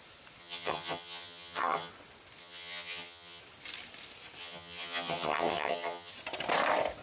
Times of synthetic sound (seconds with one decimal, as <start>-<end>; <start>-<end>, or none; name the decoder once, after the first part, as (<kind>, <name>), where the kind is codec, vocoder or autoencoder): 0.4-1.9 (vocoder, HiFi-GAN); 2.4-3.4; 4.4-6.1